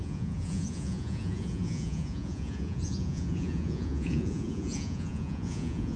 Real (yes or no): no